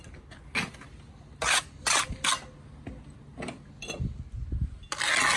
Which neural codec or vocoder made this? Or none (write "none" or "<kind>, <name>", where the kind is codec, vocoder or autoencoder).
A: none